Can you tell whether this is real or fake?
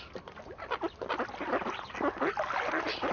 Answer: real